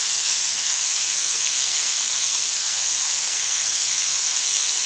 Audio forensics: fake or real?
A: fake